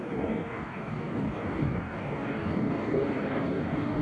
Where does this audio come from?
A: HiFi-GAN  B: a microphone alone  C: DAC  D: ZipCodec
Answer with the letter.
C